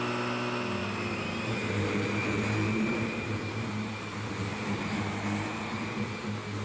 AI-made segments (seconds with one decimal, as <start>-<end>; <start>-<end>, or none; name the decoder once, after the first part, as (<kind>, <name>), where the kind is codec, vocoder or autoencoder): 0.8-4.8 (vocoder, BigVGAN v2)